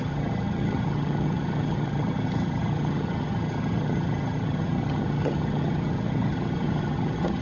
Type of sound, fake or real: fake